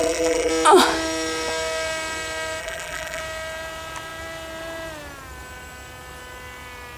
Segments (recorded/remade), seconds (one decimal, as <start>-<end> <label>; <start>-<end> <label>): 0.0-0.5 remade; 0.5-2.6 recorded; 2.6-3.2 remade; 3.2-7.0 recorded